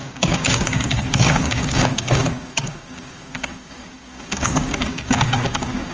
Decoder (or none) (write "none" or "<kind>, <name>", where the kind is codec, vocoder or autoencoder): codec, DAC